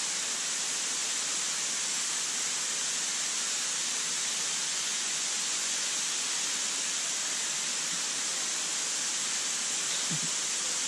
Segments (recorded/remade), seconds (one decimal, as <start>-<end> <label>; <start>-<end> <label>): 0.0-4.7 recorded; 4.7-5.9 remade; 5.9-10.9 recorded

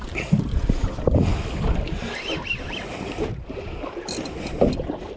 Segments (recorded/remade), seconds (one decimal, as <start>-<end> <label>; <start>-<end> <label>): 0.0-5.2 recorded

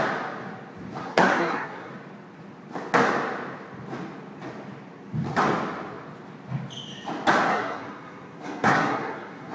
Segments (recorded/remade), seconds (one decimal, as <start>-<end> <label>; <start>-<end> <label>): 0.0-1.0 recorded; 1.0-1.9 remade; 1.9-7.5 recorded; 7.5-9.5 remade